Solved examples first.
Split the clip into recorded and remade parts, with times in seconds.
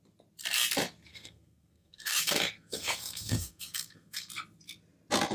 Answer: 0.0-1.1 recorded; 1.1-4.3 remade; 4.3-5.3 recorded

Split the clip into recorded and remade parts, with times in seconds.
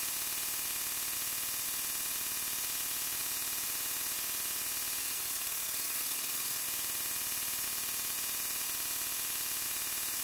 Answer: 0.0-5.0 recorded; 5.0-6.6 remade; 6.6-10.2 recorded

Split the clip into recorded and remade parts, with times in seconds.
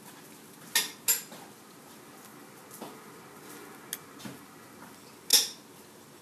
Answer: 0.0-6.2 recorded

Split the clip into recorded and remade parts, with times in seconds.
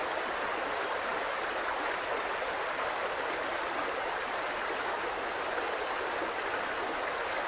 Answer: 0.0-7.5 recorded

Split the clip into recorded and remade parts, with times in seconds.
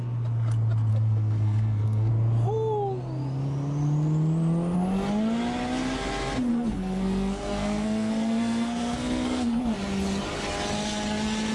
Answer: 0.0-0.9 recorded; 0.9-2.1 remade; 2.1-6.5 recorded; 6.5-9.6 remade; 9.6-11.5 recorded